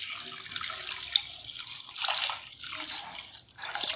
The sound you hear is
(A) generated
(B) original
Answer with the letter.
B